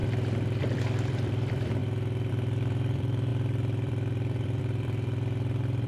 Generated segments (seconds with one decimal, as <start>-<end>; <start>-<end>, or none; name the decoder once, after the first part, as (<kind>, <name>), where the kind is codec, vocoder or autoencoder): 0.6-1.8 (vocoder, BigVGAN v2); 2.3-5.9